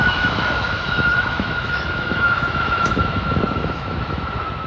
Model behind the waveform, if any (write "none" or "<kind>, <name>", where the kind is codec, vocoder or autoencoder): autoencoder, DAC-VAE